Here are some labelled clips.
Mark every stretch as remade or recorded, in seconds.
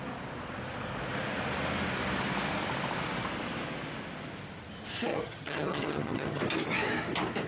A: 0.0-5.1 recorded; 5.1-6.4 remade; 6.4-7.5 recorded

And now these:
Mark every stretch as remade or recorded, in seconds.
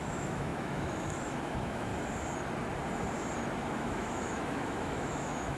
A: 0.0-1.9 remade; 1.9-3.7 recorded; 3.7-5.6 remade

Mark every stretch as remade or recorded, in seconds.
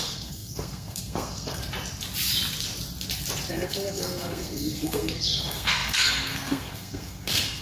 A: 0.0-1.6 remade; 1.6-3.5 recorded; 3.5-7.6 remade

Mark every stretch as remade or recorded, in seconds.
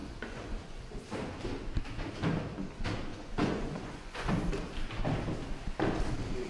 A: 0.0-0.9 remade; 0.9-3.1 recorded; 3.1-4.3 remade; 4.3-6.5 recorded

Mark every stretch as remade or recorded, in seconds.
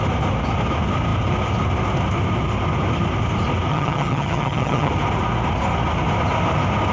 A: 0.0-3.7 recorded; 3.7-4.9 remade; 4.9-6.9 recorded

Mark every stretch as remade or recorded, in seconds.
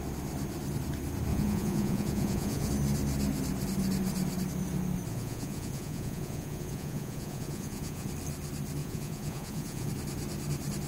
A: 0.0-1.3 recorded; 1.3-2.7 remade; 2.7-5.1 recorded; 5.1-8.1 remade; 8.1-8.8 recorded; 8.8-9.9 remade; 9.9-10.9 recorded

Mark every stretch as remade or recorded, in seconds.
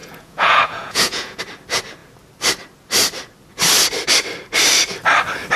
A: 0.0-1.4 remade; 1.4-5.6 recorded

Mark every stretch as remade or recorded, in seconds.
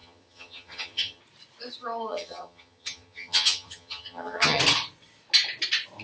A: 0.0-1.2 remade; 1.2-2.1 recorded; 2.1-4.6 remade; 4.6-6.0 recorded